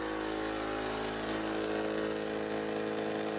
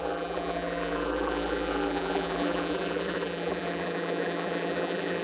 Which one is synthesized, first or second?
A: second